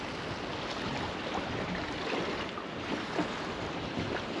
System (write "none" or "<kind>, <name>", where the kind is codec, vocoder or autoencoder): none